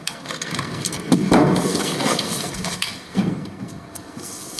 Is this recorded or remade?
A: remade